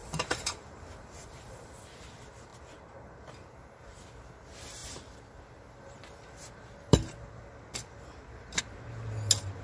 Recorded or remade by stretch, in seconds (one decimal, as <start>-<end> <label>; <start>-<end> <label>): 0.0-1.7 remade; 1.7-9.6 recorded